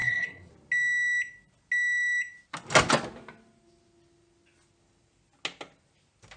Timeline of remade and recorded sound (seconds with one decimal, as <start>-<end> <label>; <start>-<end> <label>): 0.0-0.5 remade; 0.5-6.4 recorded